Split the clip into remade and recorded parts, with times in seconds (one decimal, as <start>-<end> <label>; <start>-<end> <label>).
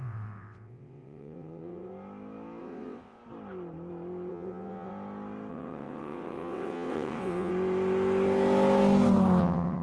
0.0-1.9 remade; 1.9-2.6 recorded; 2.6-3.2 remade; 3.2-4.3 recorded; 4.3-4.9 remade; 4.9-5.5 recorded; 5.5-7.5 remade; 7.5-9.4 recorded; 9.4-9.8 remade